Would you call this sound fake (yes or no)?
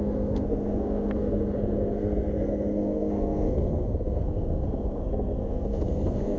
yes